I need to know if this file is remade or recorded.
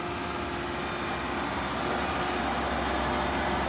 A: recorded